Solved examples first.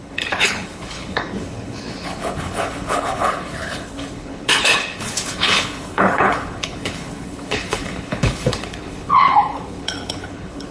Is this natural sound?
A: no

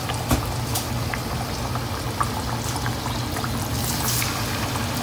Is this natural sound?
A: yes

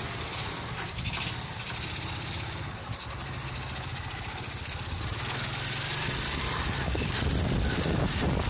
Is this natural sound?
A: yes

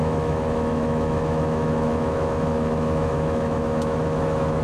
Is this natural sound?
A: no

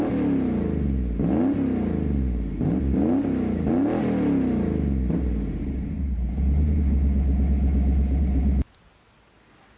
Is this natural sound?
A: yes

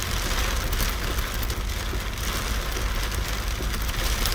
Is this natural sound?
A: yes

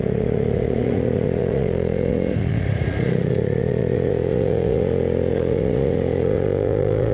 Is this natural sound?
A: no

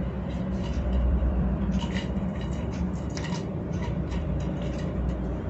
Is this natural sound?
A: no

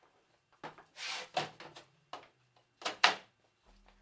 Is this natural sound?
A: yes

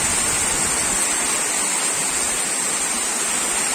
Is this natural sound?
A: yes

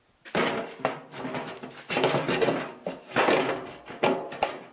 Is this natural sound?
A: yes